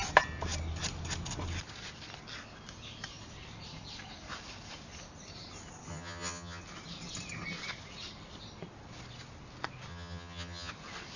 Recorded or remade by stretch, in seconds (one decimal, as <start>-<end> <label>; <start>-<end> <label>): 0.0-5.9 recorded; 5.9-6.6 remade; 6.6-9.9 recorded; 9.9-10.7 remade; 10.7-11.2 recorded